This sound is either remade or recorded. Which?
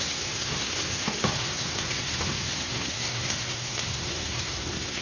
remade